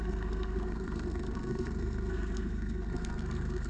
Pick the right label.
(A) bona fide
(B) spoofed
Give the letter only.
B